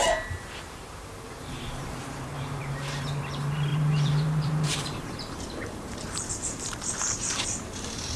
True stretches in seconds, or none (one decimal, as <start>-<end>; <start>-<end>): none